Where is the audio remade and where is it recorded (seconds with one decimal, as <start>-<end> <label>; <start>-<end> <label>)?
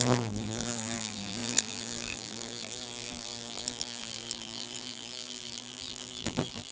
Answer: 0.0-6.7 remade